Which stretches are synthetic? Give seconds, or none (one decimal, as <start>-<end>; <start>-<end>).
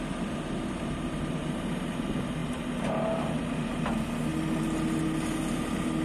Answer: none